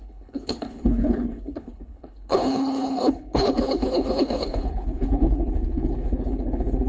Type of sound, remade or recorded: remade